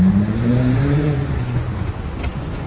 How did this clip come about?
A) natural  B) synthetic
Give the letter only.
B